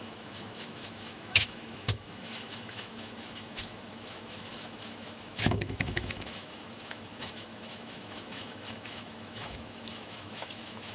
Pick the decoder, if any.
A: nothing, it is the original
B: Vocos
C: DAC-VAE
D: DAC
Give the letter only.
C